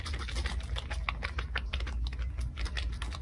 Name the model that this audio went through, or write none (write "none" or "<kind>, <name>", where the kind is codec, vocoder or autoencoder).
none